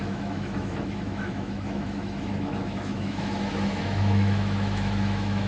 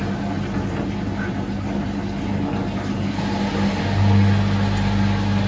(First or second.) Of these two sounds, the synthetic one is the first